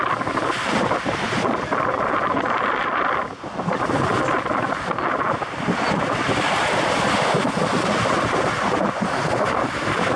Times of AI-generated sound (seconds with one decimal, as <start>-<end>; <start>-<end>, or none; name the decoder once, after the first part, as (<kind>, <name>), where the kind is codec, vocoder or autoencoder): none

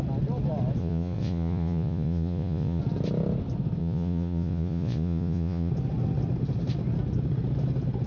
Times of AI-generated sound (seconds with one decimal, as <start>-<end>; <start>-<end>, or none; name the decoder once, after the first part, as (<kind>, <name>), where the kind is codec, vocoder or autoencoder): 0.8-2.8 (vocoder, Vocos); 3.8-5.7

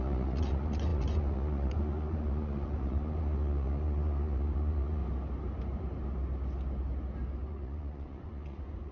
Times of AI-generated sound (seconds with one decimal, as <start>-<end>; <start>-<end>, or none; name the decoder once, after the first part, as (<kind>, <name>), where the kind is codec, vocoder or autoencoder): 0.0-5.0 (vocoder, Vocos); 7.5-8.9

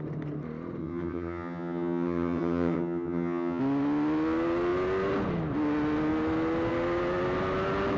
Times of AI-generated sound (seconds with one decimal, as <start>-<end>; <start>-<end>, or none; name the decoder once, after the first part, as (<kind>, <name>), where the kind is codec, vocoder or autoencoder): 0.8-3.6 (vocoder, HiFi-GAN)